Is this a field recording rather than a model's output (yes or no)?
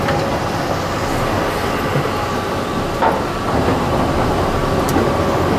yes